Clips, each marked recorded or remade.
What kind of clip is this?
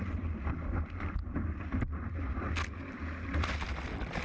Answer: recorded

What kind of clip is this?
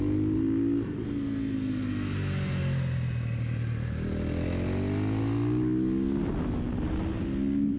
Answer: recorded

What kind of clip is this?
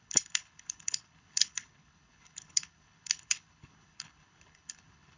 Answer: remade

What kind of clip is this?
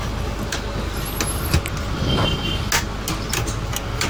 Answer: recorded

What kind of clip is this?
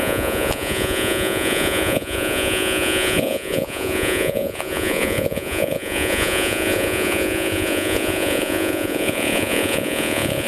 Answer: remade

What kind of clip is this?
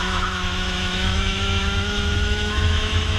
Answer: remade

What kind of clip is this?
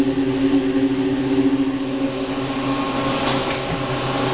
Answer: recorded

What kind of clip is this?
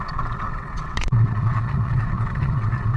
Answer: remade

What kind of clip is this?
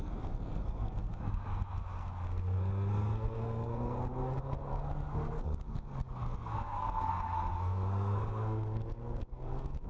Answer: remade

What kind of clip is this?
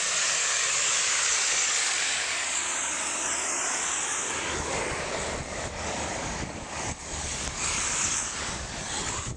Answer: remade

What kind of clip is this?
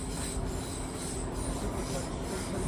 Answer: remade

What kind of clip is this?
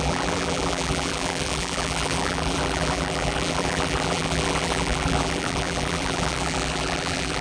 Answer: remade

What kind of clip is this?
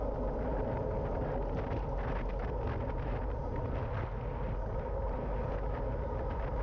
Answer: recorded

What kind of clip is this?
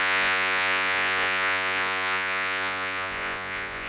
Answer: remade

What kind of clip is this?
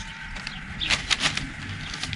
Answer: recorded